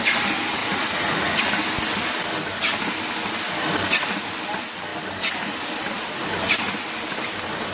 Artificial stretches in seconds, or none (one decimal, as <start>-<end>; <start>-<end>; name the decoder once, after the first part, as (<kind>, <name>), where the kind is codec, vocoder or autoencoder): 0.6-1.4 (vocoder, Vocos)